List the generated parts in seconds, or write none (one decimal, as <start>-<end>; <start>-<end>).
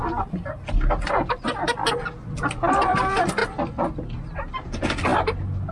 none